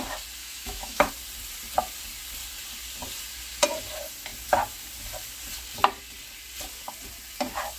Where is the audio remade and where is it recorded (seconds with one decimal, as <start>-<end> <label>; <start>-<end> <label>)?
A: 0.0-0.4 recorded; 0.4-1.1 remade; 1.1-7.8 recorded